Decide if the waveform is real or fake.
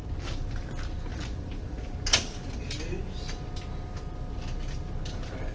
real